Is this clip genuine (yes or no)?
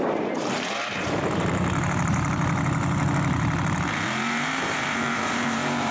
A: no